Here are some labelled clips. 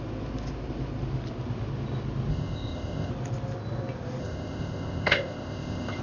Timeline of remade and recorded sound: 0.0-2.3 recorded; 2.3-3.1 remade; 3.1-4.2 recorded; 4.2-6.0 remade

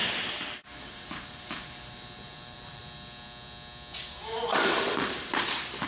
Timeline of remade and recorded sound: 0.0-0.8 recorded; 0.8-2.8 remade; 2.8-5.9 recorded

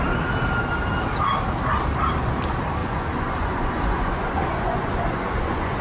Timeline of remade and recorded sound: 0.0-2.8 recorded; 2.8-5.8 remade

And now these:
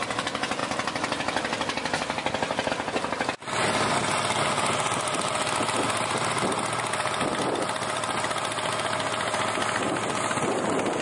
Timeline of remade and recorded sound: 0.0-11.0 recorded